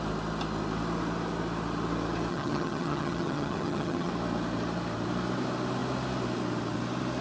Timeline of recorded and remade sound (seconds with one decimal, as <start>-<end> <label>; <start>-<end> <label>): 0.0-2.3 recorded; 2.3-4.1 remade; 4.1-7.2 recorded